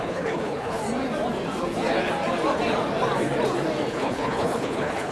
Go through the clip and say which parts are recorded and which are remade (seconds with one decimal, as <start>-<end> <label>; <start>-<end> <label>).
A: 0.0-0.8 remade; 0.8-3.9 recorded; 3.9-5.1 remade